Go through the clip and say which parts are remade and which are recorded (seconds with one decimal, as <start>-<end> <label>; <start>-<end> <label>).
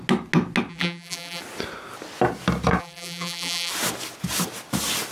0.0-0.7 recorded; 0.7-1.4 remade; 1.4-2.8 recorded; 2.8-3.7 remade; 3.7-5.1 recorded